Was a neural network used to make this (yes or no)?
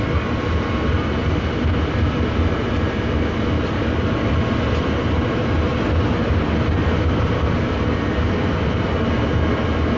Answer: no